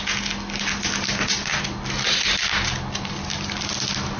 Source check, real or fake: real